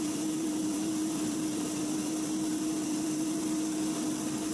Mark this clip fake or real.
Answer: fake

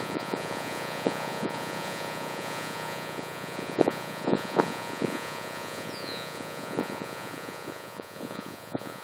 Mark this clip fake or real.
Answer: fake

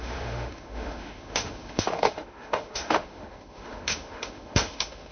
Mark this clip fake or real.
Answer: fake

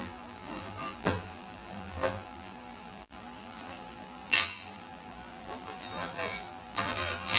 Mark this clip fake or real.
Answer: fake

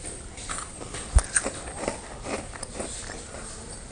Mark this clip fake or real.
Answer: real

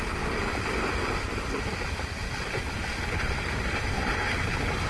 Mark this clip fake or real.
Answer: real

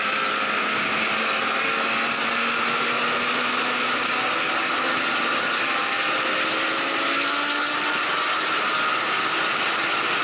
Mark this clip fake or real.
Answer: real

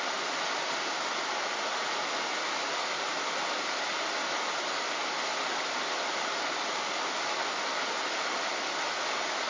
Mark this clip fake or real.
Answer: real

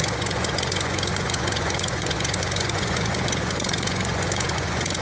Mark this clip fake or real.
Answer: fake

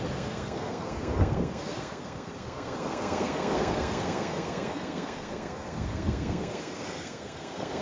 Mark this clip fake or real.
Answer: fake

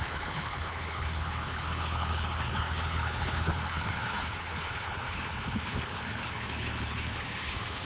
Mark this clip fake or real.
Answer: fake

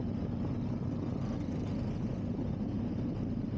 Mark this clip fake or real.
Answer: real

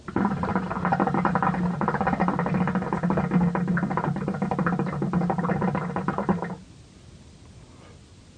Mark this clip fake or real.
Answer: real